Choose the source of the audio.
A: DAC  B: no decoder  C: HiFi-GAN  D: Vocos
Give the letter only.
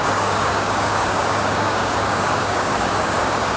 A